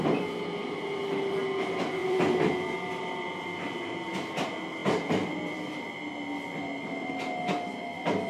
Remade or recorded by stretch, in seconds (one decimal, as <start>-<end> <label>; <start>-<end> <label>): 0.0-2.0 recorded; 2.0-2.5 remade; 2.5-4.8 recorded; 4.8-6.1 remade; 6.1-8.3 recorded

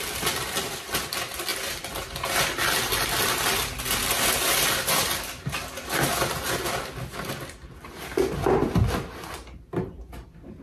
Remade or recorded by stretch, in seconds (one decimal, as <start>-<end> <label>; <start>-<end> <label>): 0.0-10.6 recorded

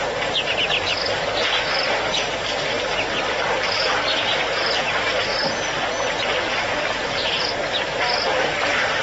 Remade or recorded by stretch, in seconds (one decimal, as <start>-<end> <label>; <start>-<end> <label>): 0.0-9.0 recorded

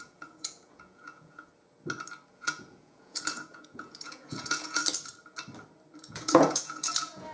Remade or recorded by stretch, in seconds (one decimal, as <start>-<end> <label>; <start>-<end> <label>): 0.0-1.5 remade; 1.5-2.3 recorded; 2.3-4.8 remade; 4.8-6.0 recorded; 6.0-7.3 remade

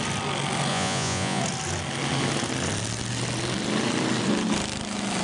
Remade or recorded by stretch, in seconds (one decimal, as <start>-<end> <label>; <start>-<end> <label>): 0.0-0.7 recorded; 0.7-1.4 remade; 1.4-5.2 recorded

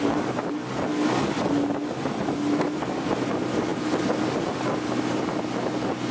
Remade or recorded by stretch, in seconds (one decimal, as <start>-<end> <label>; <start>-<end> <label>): 0.0-6.1 recorded

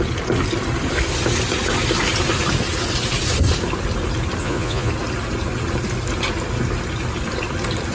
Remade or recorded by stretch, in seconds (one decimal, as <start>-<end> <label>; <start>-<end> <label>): 0.0-4.4 recorded; 4.4-4.9 remade; 4.9-7.9 recorded

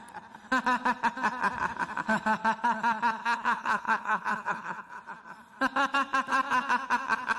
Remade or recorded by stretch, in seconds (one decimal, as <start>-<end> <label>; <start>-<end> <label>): 0.0-3.2 recorded; 3.2-5.0 remade; 5.0-7.4 recorded